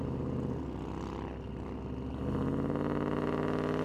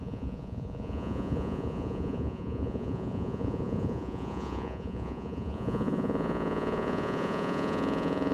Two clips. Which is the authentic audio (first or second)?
first